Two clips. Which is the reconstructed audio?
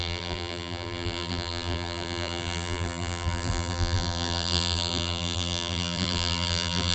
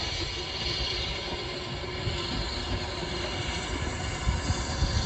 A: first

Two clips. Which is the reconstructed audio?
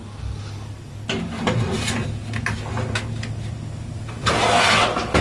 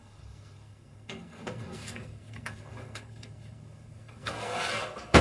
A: second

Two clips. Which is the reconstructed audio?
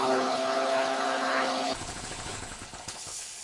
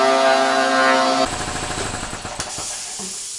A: first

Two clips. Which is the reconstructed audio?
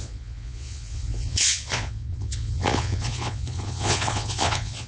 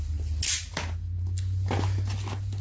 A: first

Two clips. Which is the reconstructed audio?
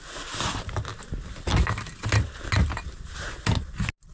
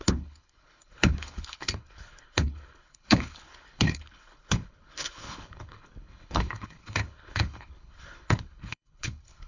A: second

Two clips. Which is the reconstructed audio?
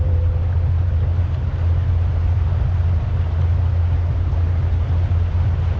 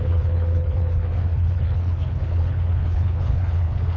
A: second